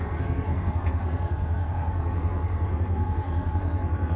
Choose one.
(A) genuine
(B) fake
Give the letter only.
B